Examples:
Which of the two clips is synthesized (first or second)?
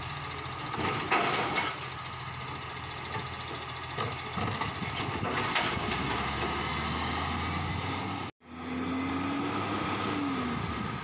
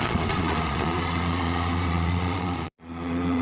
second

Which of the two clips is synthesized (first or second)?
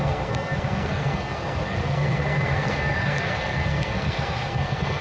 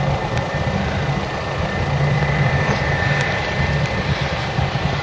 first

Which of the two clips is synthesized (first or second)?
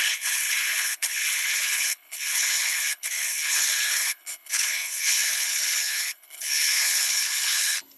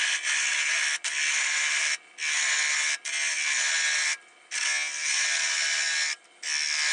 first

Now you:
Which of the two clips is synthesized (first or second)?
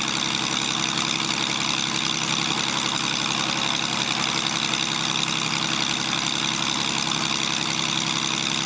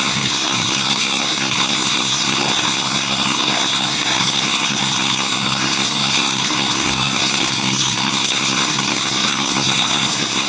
second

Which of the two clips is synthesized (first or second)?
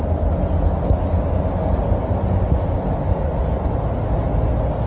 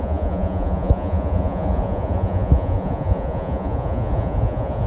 second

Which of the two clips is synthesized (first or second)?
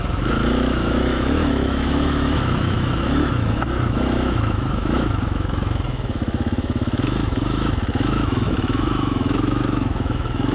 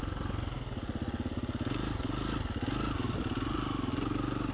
first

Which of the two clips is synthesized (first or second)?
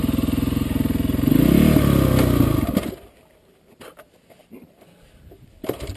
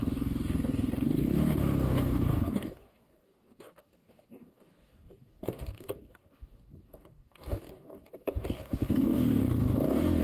second